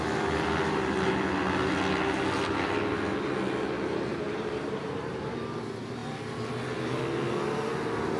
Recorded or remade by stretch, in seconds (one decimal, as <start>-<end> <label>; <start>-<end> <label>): 0.0-4.1 recorded; 4.1-5.3 remade; 5.3-8.2 recorded